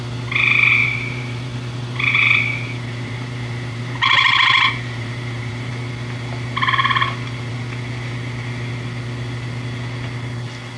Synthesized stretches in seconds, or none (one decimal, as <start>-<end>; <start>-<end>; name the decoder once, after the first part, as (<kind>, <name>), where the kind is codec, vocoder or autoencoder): 0.8-5.7 (vocoder, BigVGAN v2)